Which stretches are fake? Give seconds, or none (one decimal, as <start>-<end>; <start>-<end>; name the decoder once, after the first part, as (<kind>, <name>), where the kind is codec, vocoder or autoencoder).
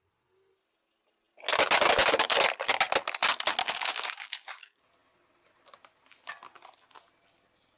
3.6-4.8 (codec, DAC)